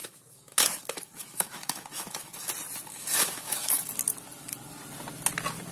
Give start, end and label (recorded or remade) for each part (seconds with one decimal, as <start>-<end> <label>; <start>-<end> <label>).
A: 0.0-2.5 remade; 2.5-2.9 recorded; 2.9-3.9 remade; 3.9-5.7 recorded